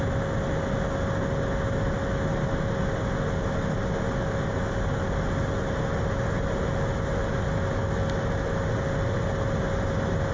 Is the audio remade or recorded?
recorded